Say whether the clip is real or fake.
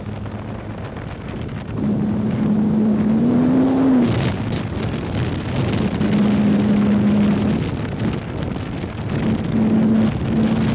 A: real